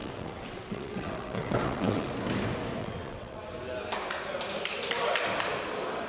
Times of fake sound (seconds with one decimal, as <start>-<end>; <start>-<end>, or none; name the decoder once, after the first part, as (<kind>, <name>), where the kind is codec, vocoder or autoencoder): 0.0-2.1 (vocoder, WaveNeXt); 2.8-3.4

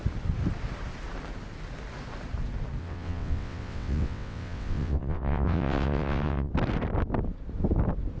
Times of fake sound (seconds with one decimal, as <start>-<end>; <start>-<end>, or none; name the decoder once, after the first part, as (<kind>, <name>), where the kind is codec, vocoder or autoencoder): 2.8-6.5 (vocoder, WaveNeXt)

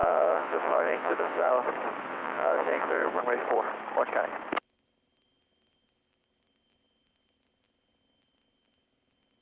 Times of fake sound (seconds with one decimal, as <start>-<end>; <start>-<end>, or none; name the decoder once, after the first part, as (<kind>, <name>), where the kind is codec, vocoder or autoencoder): 0.0-1.5 (vocoder, WaveNeXt); 2.1-3.2

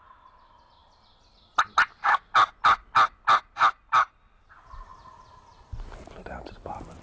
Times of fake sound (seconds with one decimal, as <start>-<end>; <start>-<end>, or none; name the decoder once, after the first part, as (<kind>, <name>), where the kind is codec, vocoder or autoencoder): none

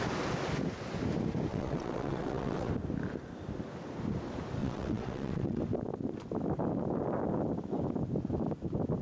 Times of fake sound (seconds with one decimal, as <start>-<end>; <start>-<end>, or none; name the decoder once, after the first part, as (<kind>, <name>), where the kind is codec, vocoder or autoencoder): 1.5-2.7 (vocoder, WaveNeXt); 4.6-5.6

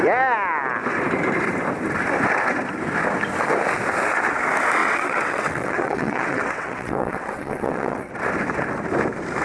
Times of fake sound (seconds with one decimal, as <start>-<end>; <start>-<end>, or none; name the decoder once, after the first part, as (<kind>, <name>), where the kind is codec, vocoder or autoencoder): 4.8-8.1 (vocoder, WaveNeXt)